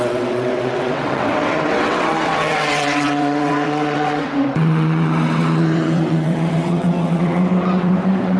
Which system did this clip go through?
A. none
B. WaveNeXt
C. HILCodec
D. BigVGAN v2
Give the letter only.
B